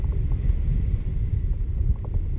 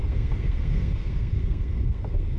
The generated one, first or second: second